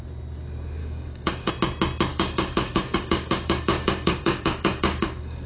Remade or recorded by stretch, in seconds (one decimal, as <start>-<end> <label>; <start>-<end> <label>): 0.0-0.8 recorded; 0.8-1.5 remade; 1.5-2.1 recorded; 2.1-5.5 remade